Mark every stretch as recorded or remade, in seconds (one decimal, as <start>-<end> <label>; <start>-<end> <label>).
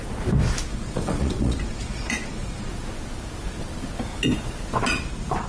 0.0-0.7 recorded; 0.7-2.7 remade; 2.7-4.9 recorded; 4.9-5.5 remade